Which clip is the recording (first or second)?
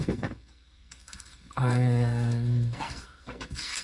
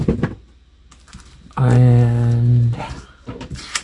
second